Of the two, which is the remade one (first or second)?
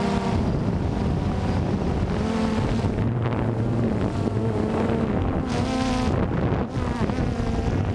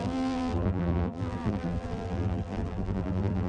second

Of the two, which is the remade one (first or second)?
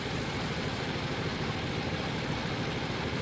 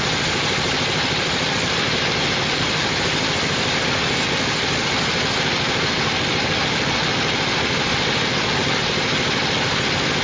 first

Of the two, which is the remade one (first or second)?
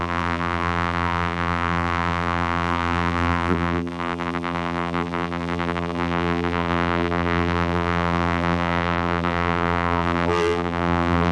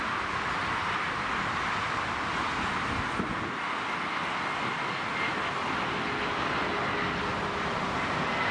first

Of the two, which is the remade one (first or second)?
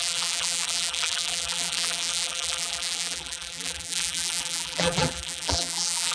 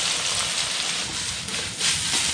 first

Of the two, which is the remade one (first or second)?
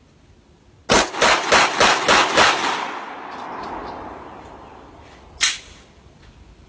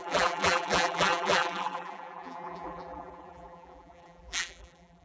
second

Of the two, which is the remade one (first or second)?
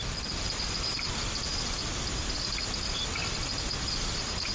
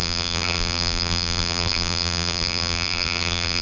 second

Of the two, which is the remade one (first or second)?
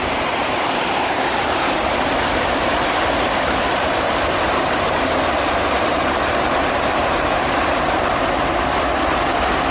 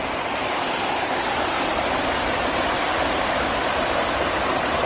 first